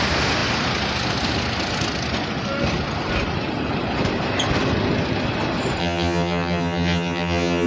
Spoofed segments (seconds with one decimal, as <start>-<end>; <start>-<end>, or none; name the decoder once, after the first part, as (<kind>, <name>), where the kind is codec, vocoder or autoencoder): 5.8-7.7 (vocoder, HiFi-GAN)